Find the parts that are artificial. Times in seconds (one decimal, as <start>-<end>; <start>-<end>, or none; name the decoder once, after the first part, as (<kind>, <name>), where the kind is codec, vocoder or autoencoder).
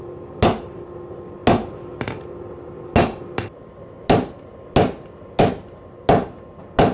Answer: none